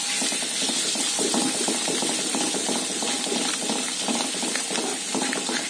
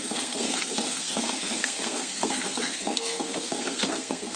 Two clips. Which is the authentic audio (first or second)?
first